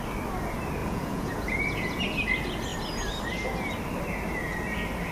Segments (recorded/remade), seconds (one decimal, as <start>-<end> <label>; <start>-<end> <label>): 0.0-0.8 recorded; 0.8-2.0 remade; 2.0-5.1 recorded